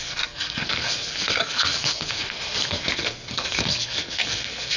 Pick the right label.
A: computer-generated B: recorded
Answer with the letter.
A